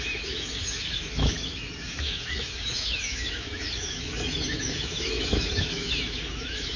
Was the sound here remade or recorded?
remade